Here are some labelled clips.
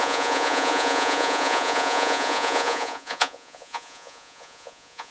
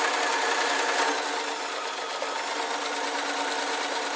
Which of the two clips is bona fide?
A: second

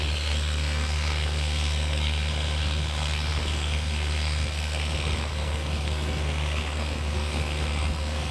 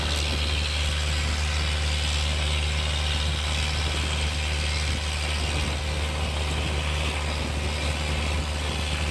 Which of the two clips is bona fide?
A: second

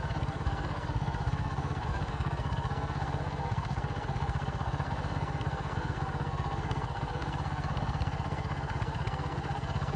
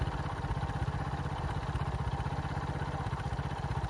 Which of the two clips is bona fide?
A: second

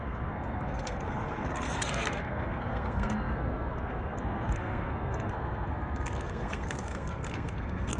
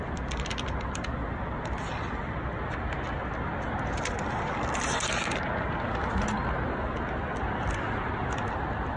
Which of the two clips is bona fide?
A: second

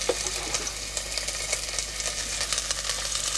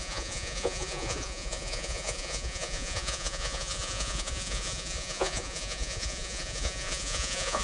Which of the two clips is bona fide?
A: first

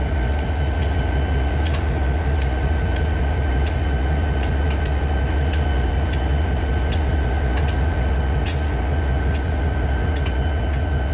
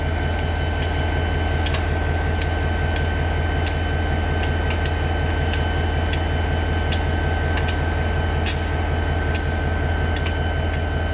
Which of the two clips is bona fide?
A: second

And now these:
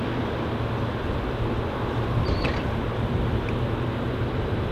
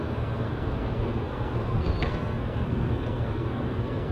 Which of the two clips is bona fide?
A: first